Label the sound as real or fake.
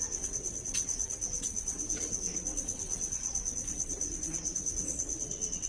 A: fake